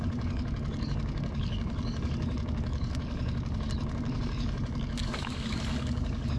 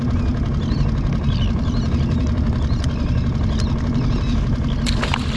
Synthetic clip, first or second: first